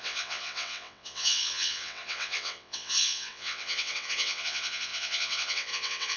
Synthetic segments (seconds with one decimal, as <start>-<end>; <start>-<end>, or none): 0.0-6.2